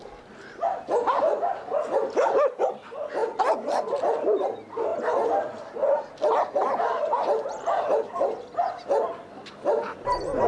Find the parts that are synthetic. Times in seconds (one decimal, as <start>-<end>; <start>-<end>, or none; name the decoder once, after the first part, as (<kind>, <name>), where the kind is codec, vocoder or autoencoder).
none